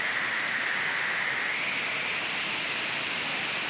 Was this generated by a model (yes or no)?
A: no